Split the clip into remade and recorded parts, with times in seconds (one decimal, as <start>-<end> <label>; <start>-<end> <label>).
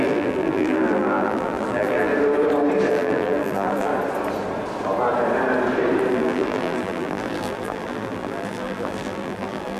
0.0-2.1 remade; 2.1-2.9 recorded; 2.9-3.9 remade; 3.9-6.1 recorded; 6.1-9.8 remade